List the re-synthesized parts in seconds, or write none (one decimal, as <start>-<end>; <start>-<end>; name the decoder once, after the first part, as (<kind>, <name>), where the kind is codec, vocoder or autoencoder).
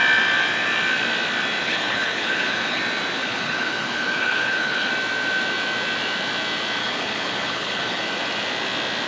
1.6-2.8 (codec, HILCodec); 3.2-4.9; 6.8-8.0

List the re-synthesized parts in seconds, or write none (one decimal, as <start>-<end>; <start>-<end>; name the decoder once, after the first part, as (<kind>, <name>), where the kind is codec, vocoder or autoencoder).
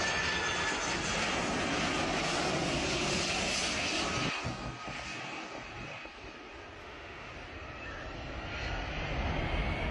6.8-7.3 (autoencoder, DAC-VAE)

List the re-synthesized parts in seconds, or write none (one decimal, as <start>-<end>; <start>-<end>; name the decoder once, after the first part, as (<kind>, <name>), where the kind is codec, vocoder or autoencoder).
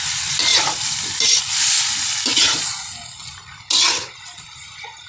0.5-1.4 (vocoder, BigVGAN v2)